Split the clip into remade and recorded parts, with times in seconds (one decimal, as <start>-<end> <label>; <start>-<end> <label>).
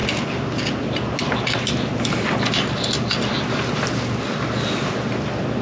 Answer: 0.0-5.6 recorded